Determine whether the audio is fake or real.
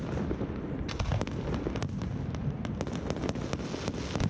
real